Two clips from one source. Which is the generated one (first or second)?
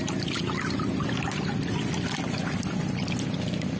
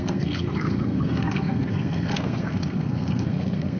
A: second